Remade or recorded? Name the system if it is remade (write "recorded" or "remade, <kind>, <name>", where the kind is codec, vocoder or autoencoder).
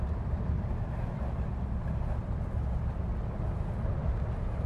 recorded